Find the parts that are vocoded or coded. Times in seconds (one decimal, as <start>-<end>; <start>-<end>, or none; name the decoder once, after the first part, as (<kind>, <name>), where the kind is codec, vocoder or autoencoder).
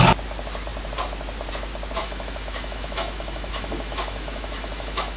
2.0-5.2 (autoencoder, DAC-VAE)